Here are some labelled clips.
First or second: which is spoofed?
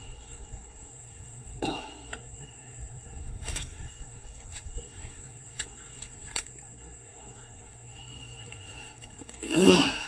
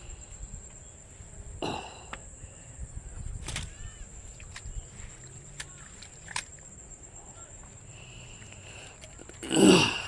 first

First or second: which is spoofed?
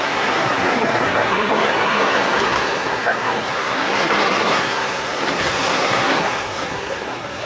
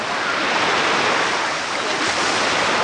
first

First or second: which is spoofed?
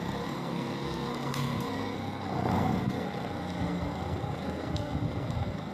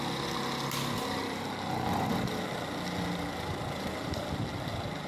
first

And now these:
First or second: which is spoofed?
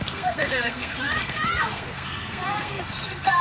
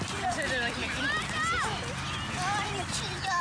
first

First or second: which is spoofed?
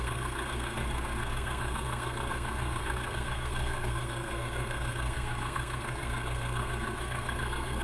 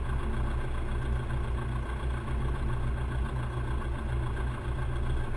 first